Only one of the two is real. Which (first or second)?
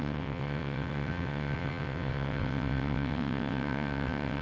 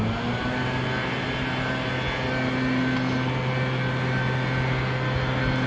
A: second